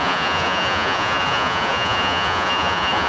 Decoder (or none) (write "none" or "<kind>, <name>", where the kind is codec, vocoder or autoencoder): vocoder, Vocos